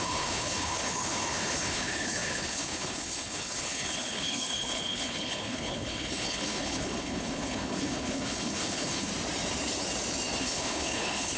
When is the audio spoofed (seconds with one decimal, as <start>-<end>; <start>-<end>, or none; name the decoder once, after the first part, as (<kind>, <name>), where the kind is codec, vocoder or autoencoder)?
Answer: 0.0-9.1 (codec, HILCodec); 10.4-11.4